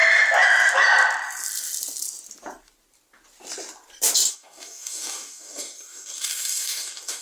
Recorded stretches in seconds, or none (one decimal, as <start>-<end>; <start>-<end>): 0.0-4.3